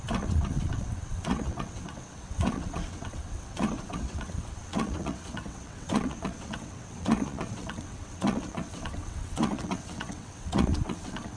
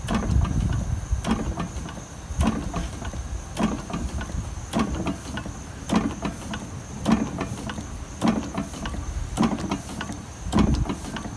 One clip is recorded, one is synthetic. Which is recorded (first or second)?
second